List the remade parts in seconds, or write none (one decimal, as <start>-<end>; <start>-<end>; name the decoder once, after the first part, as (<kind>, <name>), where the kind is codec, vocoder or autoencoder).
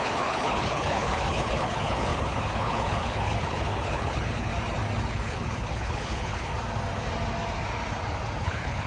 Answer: 0.0-4.5 (codec, HILCodec); 5.1-6.5; 8.4-8.9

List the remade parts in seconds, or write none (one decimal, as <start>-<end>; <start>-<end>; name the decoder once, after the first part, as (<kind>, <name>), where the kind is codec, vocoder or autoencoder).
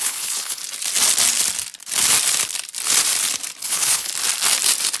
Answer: 0.0-0.6 (codec, HILCodec); 3.6-4.1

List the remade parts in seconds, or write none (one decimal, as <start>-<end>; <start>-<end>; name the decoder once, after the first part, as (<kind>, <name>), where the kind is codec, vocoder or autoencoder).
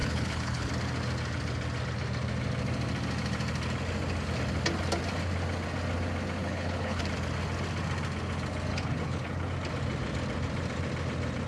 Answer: 0.0-0.7 (codec, HILCodec); 6.4-7.0; 8.7-9.5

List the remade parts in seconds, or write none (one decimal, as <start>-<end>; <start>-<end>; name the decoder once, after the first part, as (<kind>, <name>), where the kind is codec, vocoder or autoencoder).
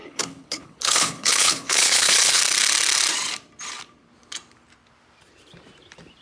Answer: 0.0-2.4 (codec, HILCodec)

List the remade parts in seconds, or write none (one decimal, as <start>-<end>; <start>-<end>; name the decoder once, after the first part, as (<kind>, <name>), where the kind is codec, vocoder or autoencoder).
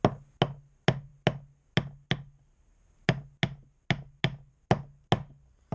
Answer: none